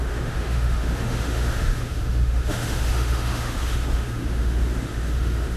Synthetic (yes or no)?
yes